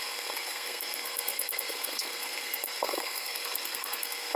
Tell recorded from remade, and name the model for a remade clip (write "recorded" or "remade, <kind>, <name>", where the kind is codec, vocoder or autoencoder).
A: remade, codec, SNAC